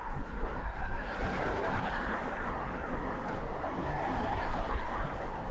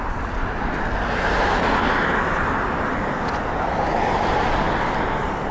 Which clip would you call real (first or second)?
second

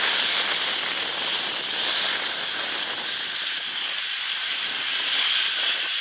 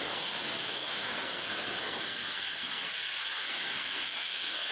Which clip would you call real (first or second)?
first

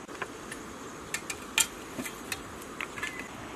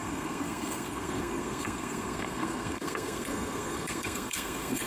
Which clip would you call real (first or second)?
first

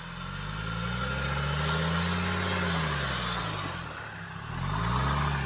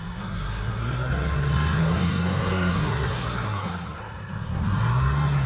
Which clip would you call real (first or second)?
first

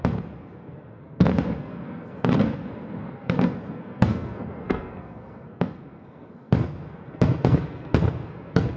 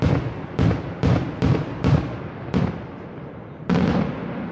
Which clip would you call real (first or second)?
second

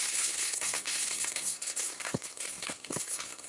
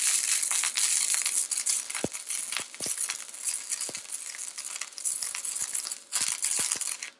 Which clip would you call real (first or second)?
second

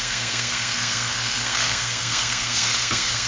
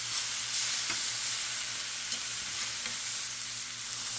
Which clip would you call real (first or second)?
second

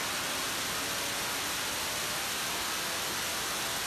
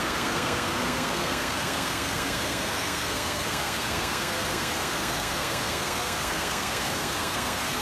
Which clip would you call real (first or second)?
first